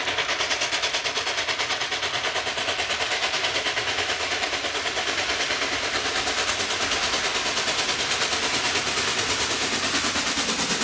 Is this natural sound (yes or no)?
yes